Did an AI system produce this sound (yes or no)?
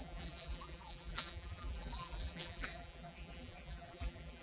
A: yes